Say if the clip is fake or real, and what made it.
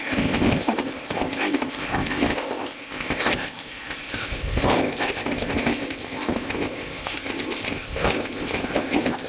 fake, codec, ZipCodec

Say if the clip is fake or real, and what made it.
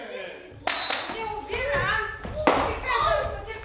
real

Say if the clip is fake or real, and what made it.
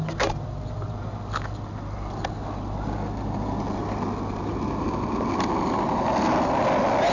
real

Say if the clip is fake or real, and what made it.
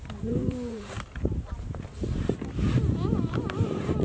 fake, vocoder, BigVGAN v2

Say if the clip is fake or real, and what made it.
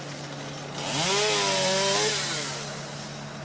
real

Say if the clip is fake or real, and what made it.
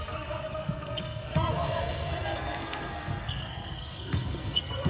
fake, codec, SNAC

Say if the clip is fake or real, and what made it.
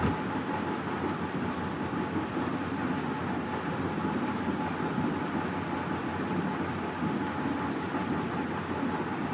real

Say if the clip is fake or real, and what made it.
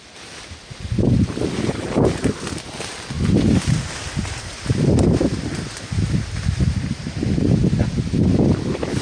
real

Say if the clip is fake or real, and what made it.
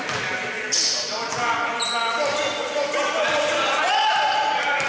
real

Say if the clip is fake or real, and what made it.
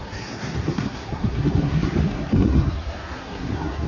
fake, codec, SNAC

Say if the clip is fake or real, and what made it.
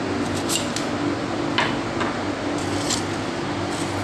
real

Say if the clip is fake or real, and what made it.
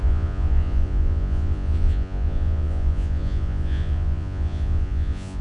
fake, vocoder, Vocos